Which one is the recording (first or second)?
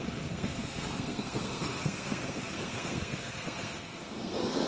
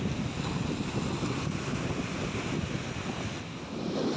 second